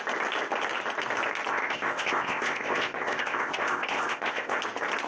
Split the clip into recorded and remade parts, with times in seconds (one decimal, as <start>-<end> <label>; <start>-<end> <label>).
0.0-1.5 recorded; 1.5-4.6 remade; 4.6-5.1 recorded